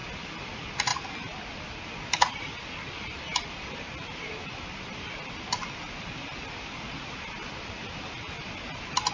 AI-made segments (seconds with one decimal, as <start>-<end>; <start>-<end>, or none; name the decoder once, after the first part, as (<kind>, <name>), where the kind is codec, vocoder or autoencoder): none